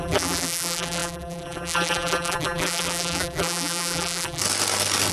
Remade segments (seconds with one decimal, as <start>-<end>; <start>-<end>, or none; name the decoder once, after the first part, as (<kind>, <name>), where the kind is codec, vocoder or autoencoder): 0.0-4.4 (vocoder, BigVGAN v2)